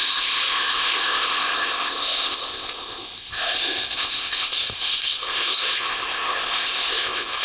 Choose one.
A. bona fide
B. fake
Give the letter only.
B